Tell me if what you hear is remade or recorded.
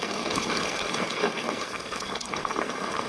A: remade